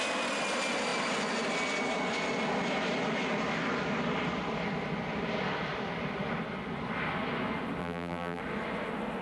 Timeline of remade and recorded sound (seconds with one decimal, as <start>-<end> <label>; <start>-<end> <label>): 0.0-7.8 recorded; 7.8-8.4 remade; 8.4-9.2 recorded